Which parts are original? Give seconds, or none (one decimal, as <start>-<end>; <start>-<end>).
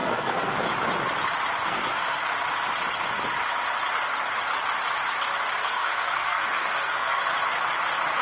0.6-1.6; 2.2-5.6; 7.3-8.2